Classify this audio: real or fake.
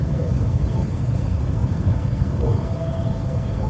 fake